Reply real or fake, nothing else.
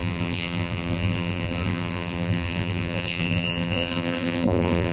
fake